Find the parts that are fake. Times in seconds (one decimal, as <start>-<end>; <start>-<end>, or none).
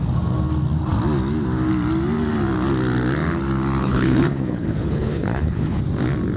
3.8-5.8